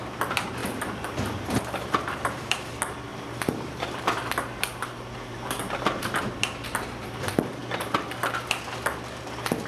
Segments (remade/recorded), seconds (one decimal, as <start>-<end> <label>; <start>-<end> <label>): 0.0-0.6 recorded; 0.6-2.7 remade; 2.7-3.1 recorded; 3.1-6.2 remade; 6.2-7.6 recorded; 7.6-8.2 remade; 8.2-9.7 recorded